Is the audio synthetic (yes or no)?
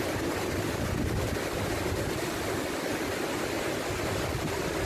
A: no